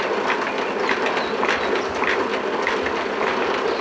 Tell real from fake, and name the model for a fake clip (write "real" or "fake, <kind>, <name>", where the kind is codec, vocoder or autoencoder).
real